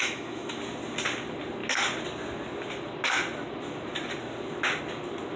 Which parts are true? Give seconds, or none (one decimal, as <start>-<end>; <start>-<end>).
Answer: 0.6-5.4